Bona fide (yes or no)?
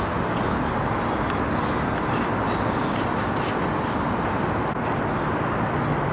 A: yes